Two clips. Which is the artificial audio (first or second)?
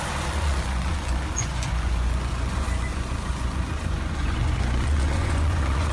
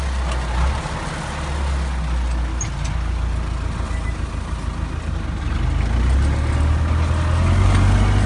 first